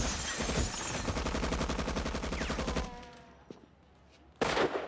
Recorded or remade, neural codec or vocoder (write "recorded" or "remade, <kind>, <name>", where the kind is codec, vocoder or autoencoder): recorded